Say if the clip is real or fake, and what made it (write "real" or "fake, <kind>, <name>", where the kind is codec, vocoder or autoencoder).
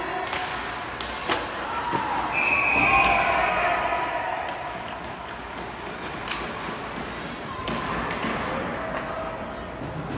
real